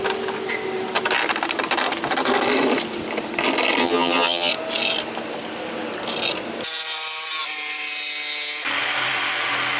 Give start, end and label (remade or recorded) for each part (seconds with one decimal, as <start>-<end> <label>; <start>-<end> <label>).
0.0-3.8 recorded; 3.8-4.5 remade; 4.5-9.8 recorded